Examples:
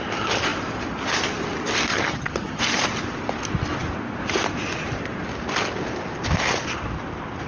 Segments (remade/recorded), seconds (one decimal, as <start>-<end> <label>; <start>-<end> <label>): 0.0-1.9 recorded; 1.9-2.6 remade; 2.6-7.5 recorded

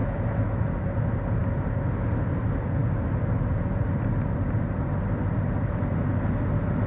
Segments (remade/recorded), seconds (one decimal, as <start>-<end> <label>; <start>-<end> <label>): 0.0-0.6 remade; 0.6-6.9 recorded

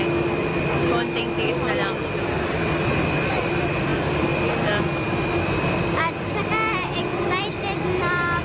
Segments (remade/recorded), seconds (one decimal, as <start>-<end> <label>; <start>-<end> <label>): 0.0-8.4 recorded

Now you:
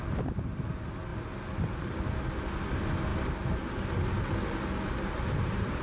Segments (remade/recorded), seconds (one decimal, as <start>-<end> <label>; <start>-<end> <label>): 0.0-5.8 recorded